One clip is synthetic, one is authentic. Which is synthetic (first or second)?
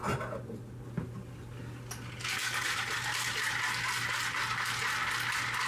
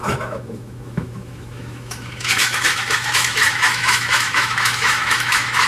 second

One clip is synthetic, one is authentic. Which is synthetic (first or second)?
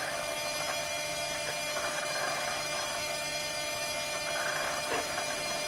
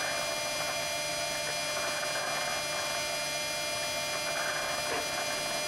first